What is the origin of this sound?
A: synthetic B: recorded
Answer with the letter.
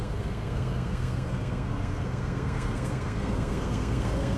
A